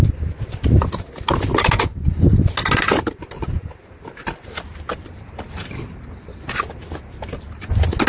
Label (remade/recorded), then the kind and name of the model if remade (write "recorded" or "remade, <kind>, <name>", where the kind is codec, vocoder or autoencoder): recorded